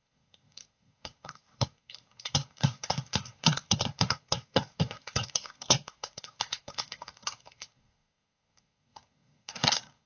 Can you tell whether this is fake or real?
fake